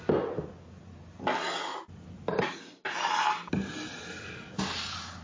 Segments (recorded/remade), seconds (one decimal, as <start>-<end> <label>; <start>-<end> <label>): 0.0-5.2 recorded